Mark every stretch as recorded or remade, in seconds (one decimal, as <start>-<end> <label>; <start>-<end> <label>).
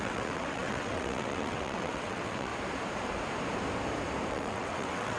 0.0-2.5 remade; 2.5-4.3 recorded; 4.3-5.2 remade